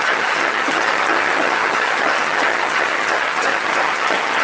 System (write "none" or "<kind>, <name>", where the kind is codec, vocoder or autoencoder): vocoder, HiFi-GAN